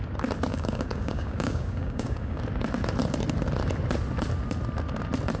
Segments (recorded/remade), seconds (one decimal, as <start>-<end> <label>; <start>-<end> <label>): 0.0-0.5 recorded; 0.5-2.4 remade; 2.4-5.4 recorded